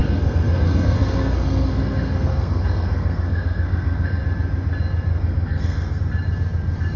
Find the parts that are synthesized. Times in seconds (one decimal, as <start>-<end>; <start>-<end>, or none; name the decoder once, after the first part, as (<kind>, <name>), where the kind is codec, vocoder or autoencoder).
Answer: 0.0-4.2 (codec, SNAC); 5.1-6.0